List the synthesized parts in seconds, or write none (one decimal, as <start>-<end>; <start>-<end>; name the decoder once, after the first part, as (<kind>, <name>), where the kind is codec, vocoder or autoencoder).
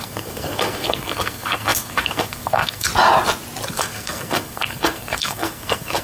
0.0-2.9 (codec, SNAC); 3.7-6.0